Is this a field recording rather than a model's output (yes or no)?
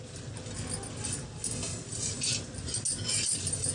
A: yes